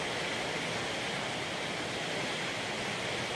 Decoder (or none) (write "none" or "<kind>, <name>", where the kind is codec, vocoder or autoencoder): none